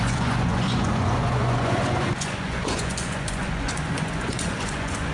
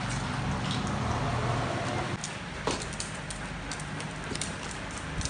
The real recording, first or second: second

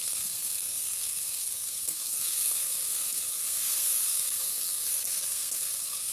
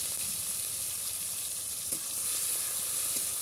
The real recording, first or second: second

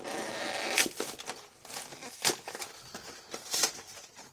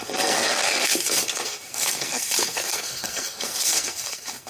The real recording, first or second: first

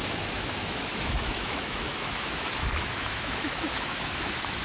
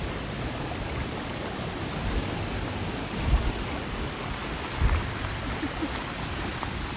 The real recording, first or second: second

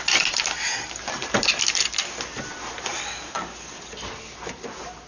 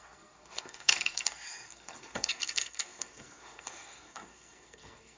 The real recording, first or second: first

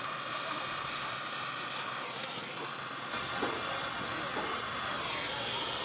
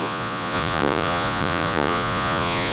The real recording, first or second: first